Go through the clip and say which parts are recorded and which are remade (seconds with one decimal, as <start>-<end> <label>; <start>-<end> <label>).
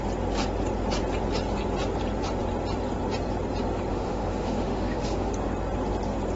0.0-3.9 recorded; 3.9-5.3 remade; 5.3-6.4 recorded